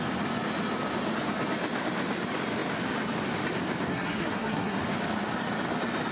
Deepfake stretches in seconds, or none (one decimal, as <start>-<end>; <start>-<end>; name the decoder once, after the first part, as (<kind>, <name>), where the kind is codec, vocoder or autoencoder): 3.9-4.8 (codec, SNAC)